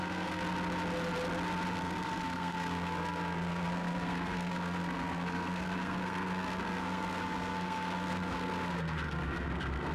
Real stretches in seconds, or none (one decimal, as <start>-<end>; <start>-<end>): 0.4-1.7

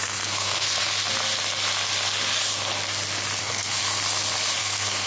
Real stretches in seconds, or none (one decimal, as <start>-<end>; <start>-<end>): 0.8-3.4; 3.8-4.6

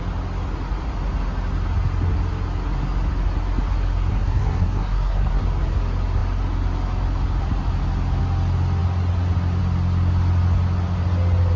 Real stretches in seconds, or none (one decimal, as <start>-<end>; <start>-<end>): 0.0-4.1; 5.4-11.6